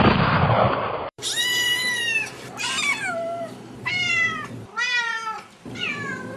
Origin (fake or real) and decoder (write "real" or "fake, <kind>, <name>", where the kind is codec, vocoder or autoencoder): fake, vocoder, BigVGAN v2